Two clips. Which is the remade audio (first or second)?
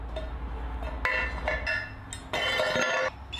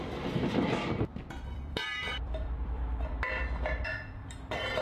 second